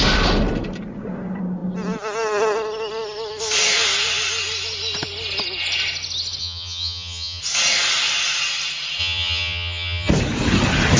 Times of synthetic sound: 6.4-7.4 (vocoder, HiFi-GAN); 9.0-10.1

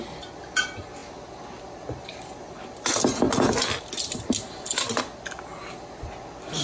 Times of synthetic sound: none